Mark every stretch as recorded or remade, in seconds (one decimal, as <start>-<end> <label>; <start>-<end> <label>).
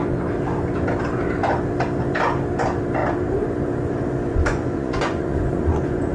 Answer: 0.0-4.3 recorded; 4.3-6.1 remade